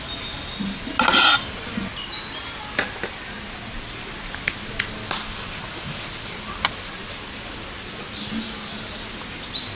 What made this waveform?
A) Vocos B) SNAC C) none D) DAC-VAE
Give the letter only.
C